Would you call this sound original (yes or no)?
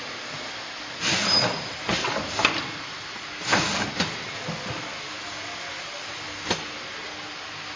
yes